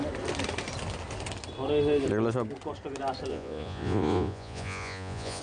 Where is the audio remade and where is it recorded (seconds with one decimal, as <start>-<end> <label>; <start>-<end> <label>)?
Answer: 0.0-3.3 recorded; 3.3-5.4 remade